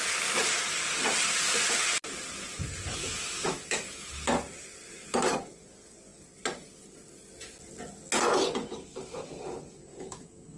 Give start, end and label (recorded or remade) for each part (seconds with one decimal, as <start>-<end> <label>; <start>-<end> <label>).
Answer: 0.0-3.0 recorded; 3.0-4.1 remade; 4.1-9.9 recorded; 9.9-10.6 remade